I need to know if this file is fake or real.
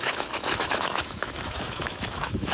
fake